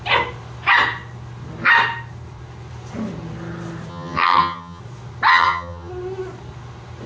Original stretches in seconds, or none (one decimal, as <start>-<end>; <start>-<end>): 0.0-3.9; 4.8-5.3; 5.9-7.1